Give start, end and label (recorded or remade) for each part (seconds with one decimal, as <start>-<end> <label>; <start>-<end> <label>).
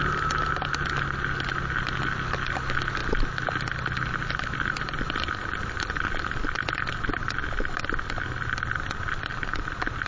0.0-3.0 recorded; 3.0-3.5 remade; 3.5-10.1 recorded